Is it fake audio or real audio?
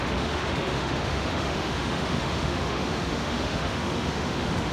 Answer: fake